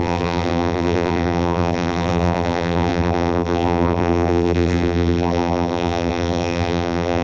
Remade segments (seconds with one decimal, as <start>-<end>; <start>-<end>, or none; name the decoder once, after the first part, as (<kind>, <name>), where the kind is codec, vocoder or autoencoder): 0.0-7.2 (vocoder, BigVGAN v2)